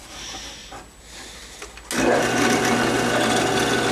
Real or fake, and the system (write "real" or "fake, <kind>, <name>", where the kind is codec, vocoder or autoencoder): real